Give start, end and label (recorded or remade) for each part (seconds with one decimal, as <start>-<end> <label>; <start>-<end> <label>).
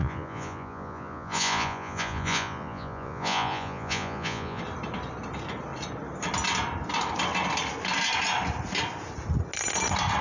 0.0-4.6 remade; 4.6-10.2 recorded